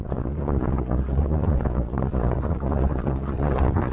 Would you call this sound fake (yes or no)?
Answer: yes